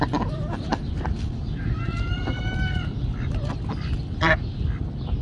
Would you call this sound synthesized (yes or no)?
no